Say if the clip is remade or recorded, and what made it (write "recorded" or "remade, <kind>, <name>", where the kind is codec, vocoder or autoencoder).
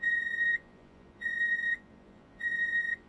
remade, vocoder, Vocos